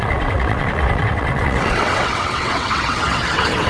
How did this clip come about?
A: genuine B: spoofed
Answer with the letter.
B